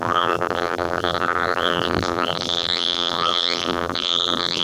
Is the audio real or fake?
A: fake